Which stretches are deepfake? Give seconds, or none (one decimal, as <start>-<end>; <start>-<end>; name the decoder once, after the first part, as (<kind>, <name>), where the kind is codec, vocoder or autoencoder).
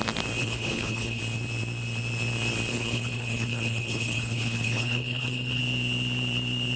0.4-1.2 (codec, HILCodec); 2.7-5.6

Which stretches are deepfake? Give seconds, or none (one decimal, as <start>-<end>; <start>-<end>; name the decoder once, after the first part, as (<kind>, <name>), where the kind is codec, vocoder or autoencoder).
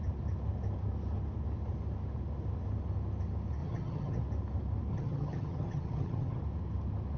3.6-4.2 (vocoder, HiFi-GAN); 4.9-6.4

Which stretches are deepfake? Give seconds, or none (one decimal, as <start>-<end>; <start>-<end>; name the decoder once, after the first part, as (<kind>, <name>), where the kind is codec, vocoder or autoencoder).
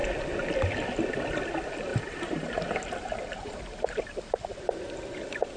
1.9-4.6 (vocoder, BigVGAN v2)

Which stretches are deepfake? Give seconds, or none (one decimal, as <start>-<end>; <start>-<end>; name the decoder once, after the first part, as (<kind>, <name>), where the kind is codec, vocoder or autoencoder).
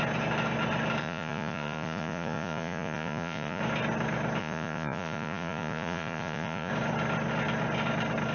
1.0-3.6 (vocoder, Vocos); 4.4-6.7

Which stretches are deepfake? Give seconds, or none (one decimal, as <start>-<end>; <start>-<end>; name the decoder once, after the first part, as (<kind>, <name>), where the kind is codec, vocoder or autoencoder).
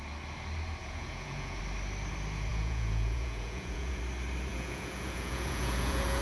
0.8-1.6 (vocoder, Vocos); 2.5-4.0; 4.5-6.2